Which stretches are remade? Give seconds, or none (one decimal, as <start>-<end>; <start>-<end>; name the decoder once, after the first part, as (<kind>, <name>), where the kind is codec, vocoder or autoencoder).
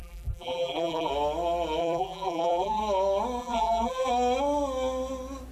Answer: 0.0-1.1 (vocoder, BigVGAN v2); 1.8-2.8; 3.4-4.1